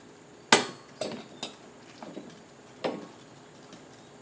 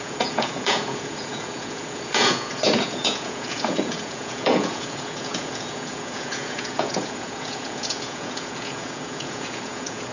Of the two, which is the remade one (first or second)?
second